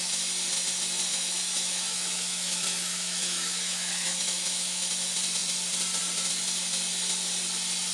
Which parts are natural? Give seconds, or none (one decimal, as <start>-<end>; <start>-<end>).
0.0-1.1; 4.9-7.9